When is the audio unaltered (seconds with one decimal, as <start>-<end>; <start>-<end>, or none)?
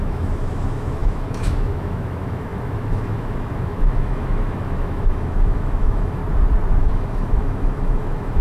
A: 6.2-6.8